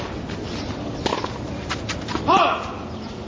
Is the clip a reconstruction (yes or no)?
no